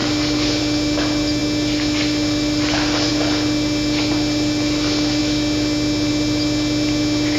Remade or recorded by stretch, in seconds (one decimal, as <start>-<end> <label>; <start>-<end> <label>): 0.0-7.4 recorded